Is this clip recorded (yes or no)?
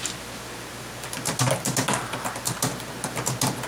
yes